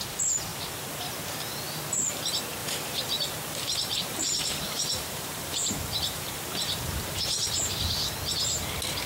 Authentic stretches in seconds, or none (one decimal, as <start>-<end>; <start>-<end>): 0.0-0.5; 1.0-2.6; 7.6-9.1